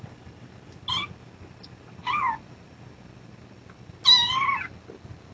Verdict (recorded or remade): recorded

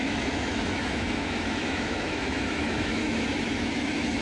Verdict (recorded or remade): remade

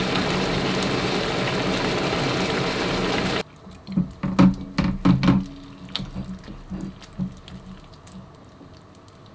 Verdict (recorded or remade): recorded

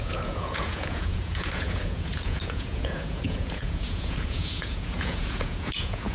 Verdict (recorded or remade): remade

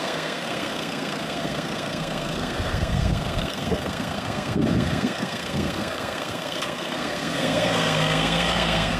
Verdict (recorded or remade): remade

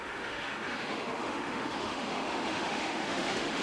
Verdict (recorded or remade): remade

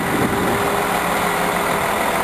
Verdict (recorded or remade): recorded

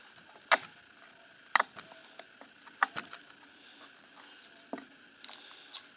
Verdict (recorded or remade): recorded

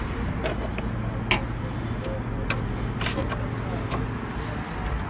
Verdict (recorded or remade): recorded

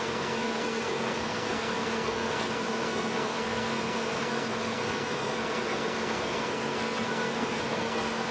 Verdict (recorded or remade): remade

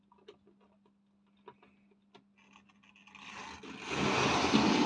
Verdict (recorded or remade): recorded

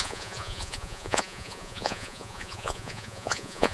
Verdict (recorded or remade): remade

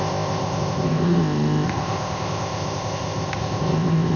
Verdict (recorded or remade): remade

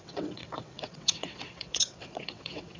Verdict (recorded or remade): remade